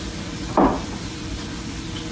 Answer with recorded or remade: remade